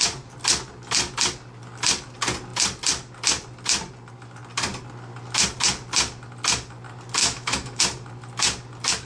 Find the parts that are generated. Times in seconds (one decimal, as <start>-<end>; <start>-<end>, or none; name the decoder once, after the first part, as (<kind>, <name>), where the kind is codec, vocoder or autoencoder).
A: 7.2-7.8 (autoencoder, DAC-VAE)